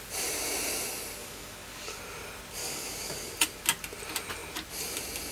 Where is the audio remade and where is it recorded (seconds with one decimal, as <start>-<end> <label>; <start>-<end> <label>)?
0.0-1.2 recorded; 1.2-2.0 remade; 2.0-2.6 recorded; 2.6-3.3 remade; 3.3-5.3 recorded